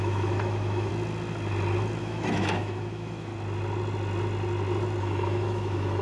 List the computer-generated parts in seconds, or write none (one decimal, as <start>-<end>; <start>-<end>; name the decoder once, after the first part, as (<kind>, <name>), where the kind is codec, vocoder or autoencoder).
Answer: 0.0-0.9 (autoencoder, DAC-VAE); 2.0-3.3; 5.0-6.0